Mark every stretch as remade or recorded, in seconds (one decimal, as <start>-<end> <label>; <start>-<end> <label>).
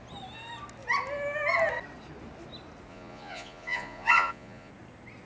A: 0.0-2.9 recorded; 2.9-4.7 remade; 4.7-5.3 recorded